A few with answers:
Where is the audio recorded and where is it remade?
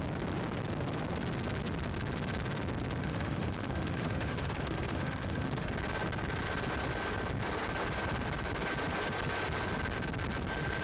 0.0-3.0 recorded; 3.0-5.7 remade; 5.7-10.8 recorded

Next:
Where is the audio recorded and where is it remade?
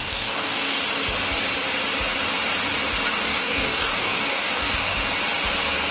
0.0-0.8 remade; 0.8-3.1 recorded; 3.1-5.0 remade; 5.0-5.9 recorded